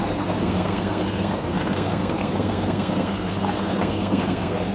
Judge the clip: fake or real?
fake